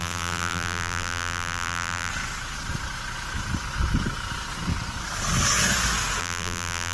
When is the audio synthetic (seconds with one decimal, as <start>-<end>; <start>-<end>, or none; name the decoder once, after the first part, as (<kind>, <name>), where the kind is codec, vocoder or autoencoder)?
0.0-2.1 (vocoder, BigVGAN v2); 6.2-6.9